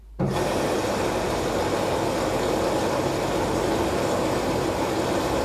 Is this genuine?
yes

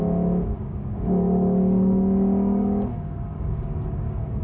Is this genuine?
no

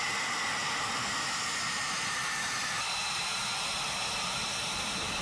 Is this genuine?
yes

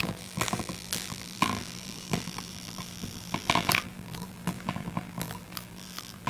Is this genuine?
no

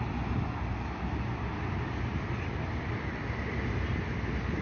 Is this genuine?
yes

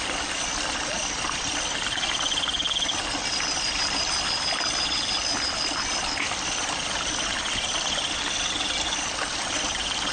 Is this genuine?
yes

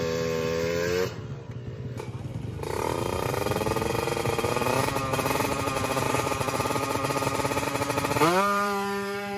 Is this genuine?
no